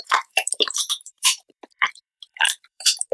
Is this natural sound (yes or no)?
no